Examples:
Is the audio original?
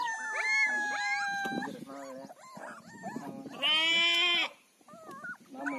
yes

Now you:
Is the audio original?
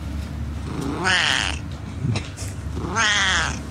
yes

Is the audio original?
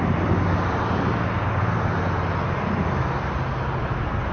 yes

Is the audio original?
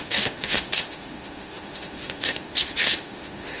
no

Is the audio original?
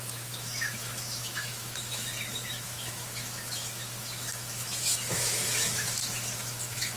no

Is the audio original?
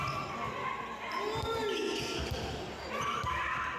yes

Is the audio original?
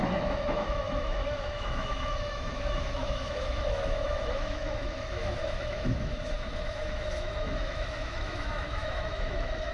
no